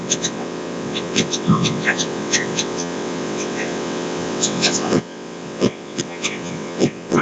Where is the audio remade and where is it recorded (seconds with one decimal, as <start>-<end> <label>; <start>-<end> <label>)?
0.0-7.2 remade